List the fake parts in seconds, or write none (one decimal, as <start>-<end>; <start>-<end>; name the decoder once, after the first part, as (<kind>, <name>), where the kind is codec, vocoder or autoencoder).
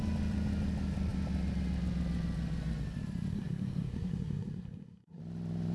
3.3-5.2 (codec, SNAC)